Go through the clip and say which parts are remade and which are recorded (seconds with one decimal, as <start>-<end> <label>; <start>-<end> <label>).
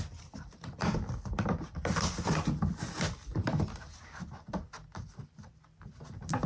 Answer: 0.0-6.5 recorded